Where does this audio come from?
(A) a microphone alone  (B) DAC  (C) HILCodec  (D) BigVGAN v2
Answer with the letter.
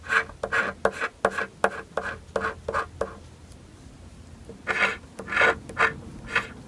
A